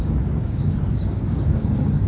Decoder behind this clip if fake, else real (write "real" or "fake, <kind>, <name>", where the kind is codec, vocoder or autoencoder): fake, codec, DAC